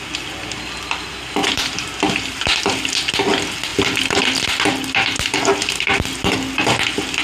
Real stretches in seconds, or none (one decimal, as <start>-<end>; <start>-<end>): 0.0-1.4; 2.6-3.7; 4.6-7.2